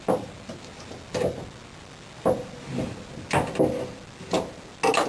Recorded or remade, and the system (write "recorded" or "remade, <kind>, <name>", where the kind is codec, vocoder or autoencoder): recorded